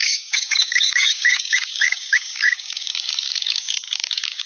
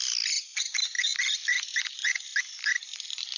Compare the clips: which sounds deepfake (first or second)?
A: first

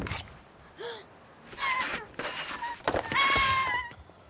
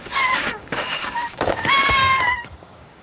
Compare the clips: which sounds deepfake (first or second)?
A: second